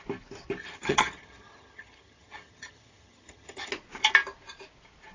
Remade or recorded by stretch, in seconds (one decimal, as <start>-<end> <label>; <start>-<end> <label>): 0.0-0.6 recorded; 0.6-3.7 remade; 3.7-5.1 recorded